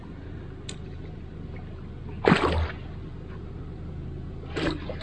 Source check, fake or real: real